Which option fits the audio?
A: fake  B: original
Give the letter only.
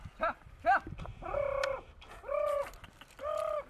B